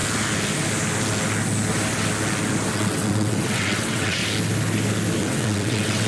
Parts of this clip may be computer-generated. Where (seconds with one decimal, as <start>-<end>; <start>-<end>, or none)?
2.7-4.2; 5.2-6.1